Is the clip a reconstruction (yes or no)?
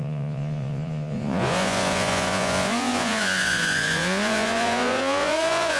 yes